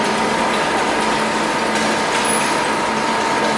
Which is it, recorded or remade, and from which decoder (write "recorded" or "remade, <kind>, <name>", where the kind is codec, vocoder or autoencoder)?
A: recorded